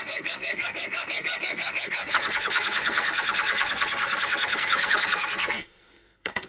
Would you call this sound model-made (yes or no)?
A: yes